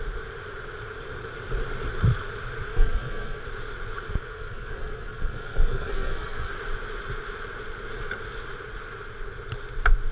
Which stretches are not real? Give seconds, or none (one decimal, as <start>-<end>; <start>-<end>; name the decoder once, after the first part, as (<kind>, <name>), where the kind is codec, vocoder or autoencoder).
2.7-3.4 (codec, SNAC); 4.3-6.5